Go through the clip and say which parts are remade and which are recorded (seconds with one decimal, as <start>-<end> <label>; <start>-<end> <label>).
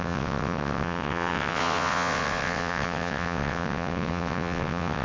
0.0-5.0 remade